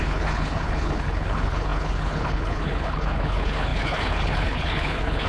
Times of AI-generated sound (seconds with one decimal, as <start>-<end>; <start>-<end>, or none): 0.0-5.3